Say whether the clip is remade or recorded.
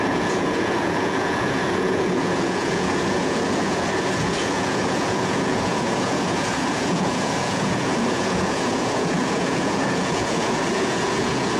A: remade